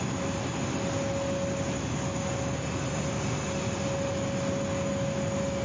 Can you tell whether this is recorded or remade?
recorded